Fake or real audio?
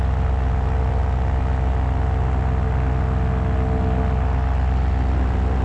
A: real